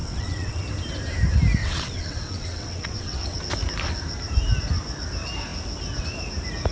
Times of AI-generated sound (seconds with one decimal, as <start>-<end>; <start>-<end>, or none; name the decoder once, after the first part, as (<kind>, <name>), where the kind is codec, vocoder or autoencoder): 0.0-0.6 (vocoder, WaveNeXt); 1.6-3.4